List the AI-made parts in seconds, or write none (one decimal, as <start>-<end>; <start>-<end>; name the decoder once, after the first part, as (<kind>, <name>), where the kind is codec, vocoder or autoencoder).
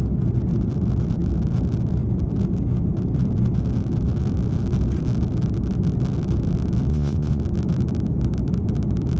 6.9-7.4 (vocoder, Vocos)